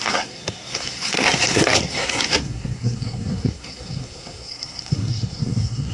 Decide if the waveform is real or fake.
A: fake